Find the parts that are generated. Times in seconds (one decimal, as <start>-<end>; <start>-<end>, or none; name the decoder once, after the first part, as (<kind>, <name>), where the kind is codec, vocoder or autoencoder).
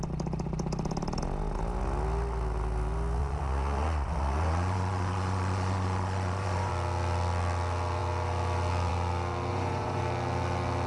3.2-6.7 (vocoder, Vocos); 9.5-10.0